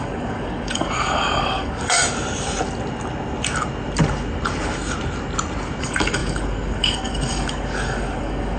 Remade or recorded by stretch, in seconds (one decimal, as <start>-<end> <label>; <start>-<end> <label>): 0.0-2.0 remade; 2.0-5.8 recorded; 5.8-8.6 remade